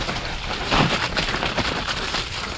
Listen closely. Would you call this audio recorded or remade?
recorded